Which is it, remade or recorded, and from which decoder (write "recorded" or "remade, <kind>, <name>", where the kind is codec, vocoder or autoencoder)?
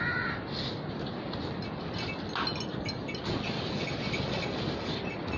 recorded